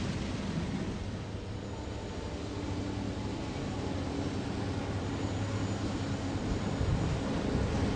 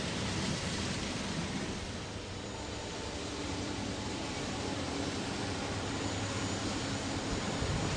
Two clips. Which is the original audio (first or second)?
first